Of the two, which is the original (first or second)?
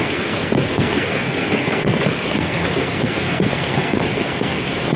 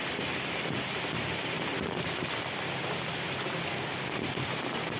second